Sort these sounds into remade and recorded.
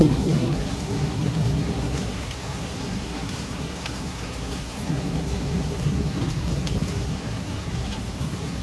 remade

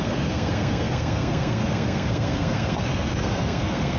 remade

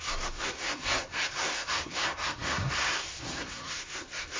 remade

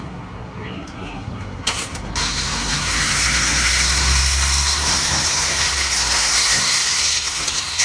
remade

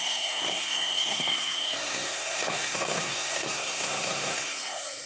remade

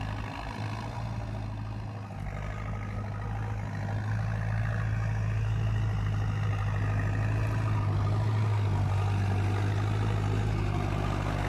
recorded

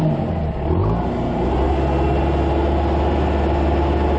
recorded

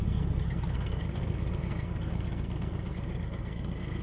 remade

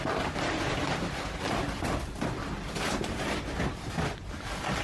recorded